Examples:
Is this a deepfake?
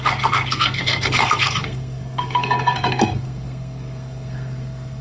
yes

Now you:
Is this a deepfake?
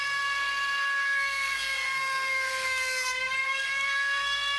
yes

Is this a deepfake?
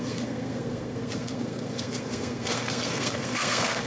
yes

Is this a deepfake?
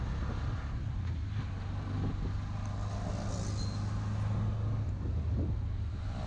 no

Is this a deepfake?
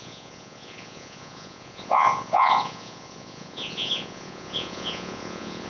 yes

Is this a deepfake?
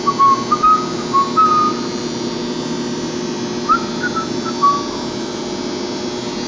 no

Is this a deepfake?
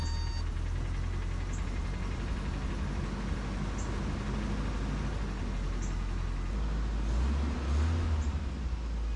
no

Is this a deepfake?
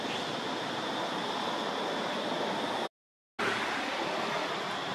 no